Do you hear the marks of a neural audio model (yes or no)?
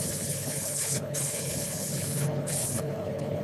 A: yes